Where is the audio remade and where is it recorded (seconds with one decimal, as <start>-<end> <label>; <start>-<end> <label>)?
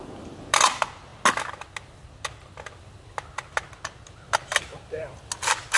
0.0-5.8 recorded